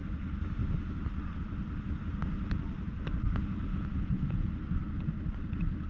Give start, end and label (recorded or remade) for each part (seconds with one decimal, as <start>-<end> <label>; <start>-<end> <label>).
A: 0.0-3.7 recorded; 3.7-4.5 remade; 4.5-5.9 recorded